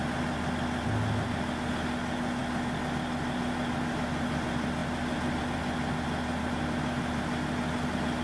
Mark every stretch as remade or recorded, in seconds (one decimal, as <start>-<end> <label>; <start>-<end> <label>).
0.0-8.2 recorded